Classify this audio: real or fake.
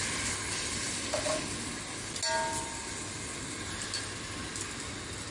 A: real